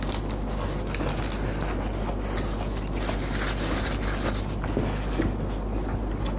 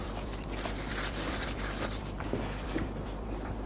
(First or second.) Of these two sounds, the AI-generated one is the second